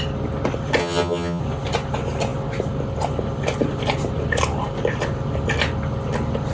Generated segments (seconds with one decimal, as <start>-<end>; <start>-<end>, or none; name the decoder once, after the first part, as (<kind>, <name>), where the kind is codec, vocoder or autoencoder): 0.8-1.4 (vocoder, HiFi-GAN)